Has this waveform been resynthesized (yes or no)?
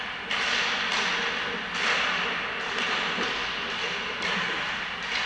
no